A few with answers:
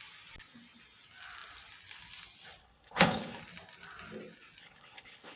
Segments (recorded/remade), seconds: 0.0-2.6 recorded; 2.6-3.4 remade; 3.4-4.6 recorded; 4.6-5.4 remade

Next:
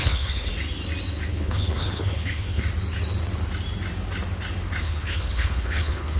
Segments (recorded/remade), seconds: 0.0-0.5 remade; 0.5-1.3 recorded; 1.3-2.6 remade; 2.6-4.8 recorded; 4.8-6.2 remade

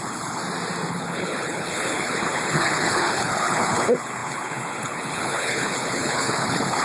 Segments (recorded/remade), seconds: 0.0-0.4 remade; 0.4-0.9 recorded; 0.9-6.8 remade

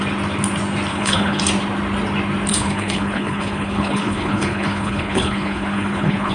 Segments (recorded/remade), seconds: 0.0-0.9 recorded; 0.9-1.4 remade; 1.4-2.5 recorded; 2.5-6.3 remade

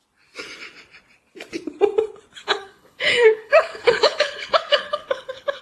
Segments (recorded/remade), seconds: 0.0-2.4 recorded; 2.4-5.6 remade

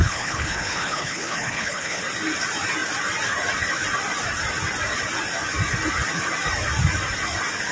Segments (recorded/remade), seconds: 0.0-2.0 remade; 2.0-7.7 recorded